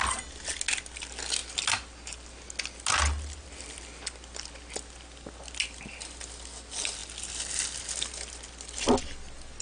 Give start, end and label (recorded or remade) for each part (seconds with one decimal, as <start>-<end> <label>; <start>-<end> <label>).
0.0-9.6 recorded

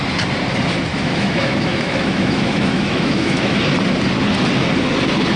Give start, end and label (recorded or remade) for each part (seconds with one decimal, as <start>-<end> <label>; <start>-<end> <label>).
0.0-0.9 recorded; 0.9-3.6 remade; 3.6-5.4 recorded

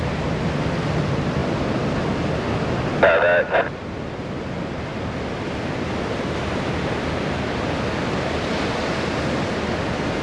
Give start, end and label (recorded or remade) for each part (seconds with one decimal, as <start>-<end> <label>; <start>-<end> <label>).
0.0-1.4 recorded; 1.4-2.7 remade; 2.7-10.2 recorded

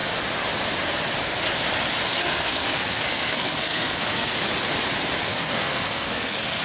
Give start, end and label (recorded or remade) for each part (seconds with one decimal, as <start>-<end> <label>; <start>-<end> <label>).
0.0-2.1 recorded; 2.1-4.3 remade; 4.3-5.3 recorded; 5.3-6.6 remade